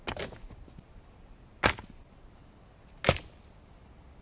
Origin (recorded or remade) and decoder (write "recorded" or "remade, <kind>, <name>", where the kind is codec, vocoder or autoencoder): recorded